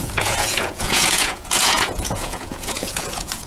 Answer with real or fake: fake